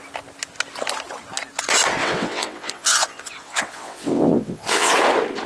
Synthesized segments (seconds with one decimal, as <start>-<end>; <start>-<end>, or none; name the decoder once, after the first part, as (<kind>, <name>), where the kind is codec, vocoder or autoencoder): 2.0-4.9 (vocoder, WaveNeXt)